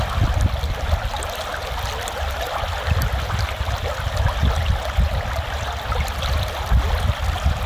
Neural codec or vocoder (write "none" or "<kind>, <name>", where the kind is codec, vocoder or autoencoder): none